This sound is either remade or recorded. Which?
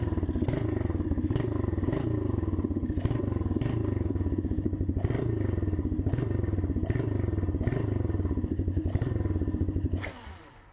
recorded